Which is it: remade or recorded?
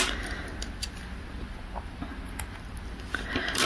recorded